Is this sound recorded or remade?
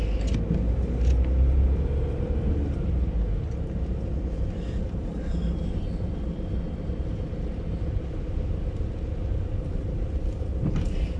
recorded